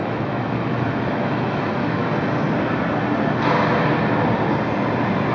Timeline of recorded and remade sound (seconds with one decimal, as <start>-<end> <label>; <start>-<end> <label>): 0.0-2.0 remade; 2.0-5.3 recorded